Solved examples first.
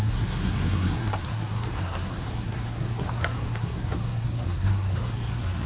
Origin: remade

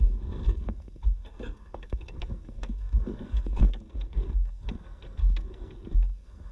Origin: remade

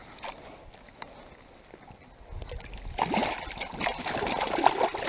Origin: recorded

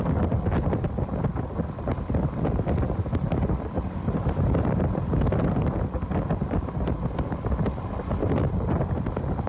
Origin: recorded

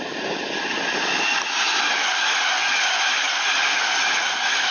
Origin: recorded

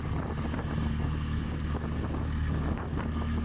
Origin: recorded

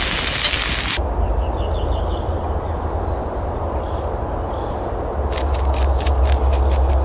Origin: recorded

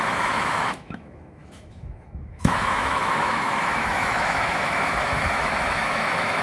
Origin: remade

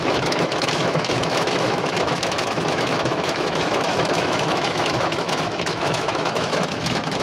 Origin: remade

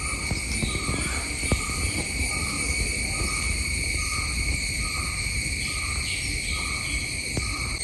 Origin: recorded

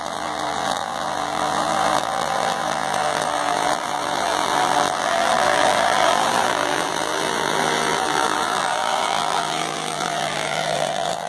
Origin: remade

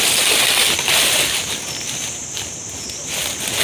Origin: recorded